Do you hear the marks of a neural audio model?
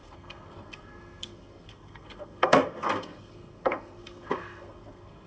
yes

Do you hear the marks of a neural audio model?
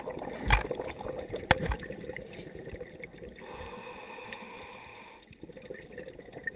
no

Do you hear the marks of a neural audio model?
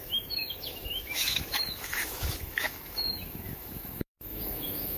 yes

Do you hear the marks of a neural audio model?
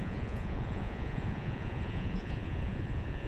yes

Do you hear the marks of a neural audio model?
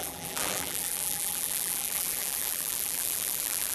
yes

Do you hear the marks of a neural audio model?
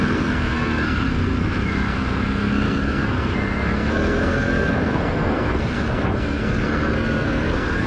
yes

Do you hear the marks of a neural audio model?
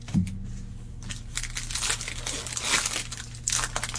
no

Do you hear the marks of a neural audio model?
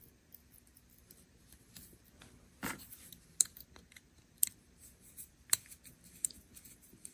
yes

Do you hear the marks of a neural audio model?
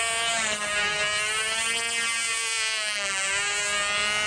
no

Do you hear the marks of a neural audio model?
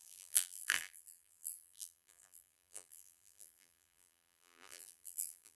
yes